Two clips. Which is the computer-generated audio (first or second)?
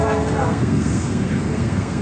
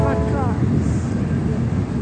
first